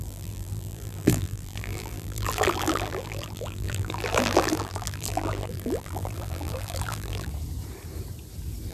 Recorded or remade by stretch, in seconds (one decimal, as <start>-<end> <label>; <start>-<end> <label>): 0.0-7.3 remade; 7.3-8.7 recorded